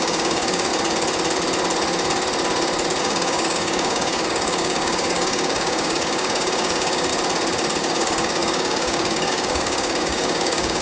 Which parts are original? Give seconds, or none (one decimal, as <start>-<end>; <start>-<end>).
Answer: 0.7-3.0; 7.1-7.8